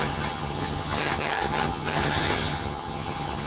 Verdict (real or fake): fake